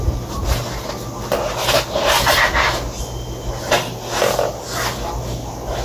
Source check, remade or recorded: recorded